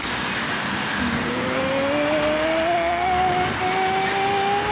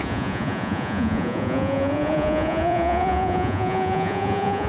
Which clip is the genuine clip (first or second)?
first